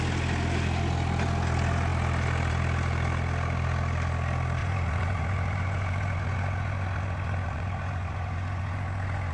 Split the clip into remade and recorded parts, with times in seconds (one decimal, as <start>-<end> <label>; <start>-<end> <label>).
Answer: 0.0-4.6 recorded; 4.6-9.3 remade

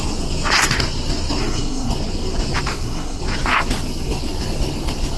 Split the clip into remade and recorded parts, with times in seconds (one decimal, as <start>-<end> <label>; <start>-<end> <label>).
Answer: 0.0-1.4 recorded; 1.4-1.9 remade; 1.9-2.7 recorded; 2.7-3.2 remade; 3.2-5.2 recorded

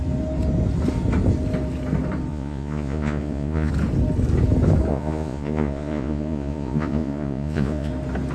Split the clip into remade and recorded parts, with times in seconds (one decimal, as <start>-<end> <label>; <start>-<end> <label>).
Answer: 0.0-2.3 recorded; 2.3-3.7 remade; 3.7-4.9 recorded; 4.9-7.9 remade; 7.9-8.3 recorded

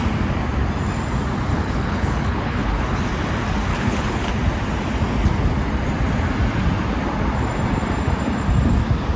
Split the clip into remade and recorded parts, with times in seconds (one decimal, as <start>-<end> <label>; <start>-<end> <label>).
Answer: 0.0-1.5 recorded; 1.5-3.0 remade; 3.0-3.7 recorded; 3.7-4.3 remade; 4.3-9.2 recorded